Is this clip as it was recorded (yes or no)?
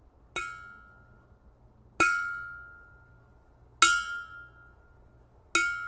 yes